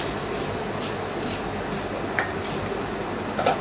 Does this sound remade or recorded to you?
recorded